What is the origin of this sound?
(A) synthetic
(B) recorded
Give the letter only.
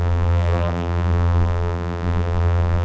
A